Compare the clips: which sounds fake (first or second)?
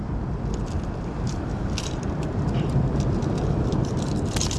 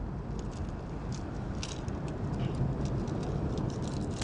first